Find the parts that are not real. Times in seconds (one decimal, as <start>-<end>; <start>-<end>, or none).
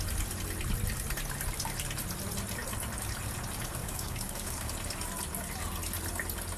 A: 3.8-4.7